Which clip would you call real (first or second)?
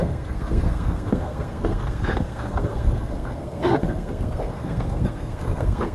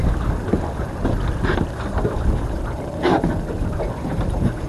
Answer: second